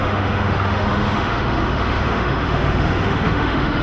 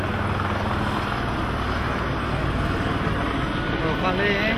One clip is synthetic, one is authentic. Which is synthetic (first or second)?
first